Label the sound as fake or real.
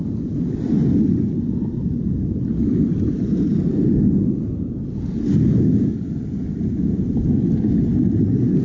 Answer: real